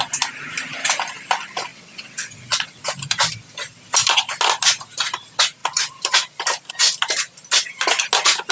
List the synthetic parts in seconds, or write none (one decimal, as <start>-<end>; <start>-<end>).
1.7-2.8